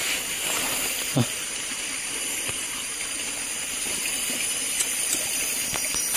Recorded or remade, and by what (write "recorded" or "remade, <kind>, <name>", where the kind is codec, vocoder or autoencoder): recorded